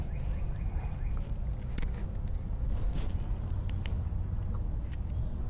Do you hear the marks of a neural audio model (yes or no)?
no